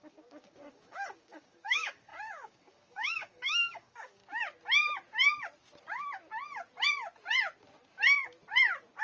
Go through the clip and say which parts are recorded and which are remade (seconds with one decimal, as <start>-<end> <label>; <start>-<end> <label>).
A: 0.0-4.2 remade; 4.2-9.0 recorded